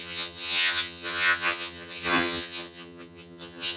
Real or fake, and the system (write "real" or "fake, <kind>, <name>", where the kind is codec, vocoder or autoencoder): fake, vocoder, HiFi-GAN